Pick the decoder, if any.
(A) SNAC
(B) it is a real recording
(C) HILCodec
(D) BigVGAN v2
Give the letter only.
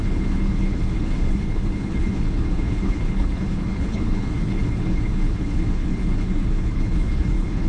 C